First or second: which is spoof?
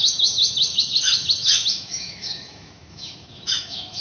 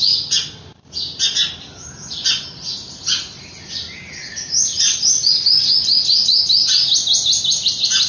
first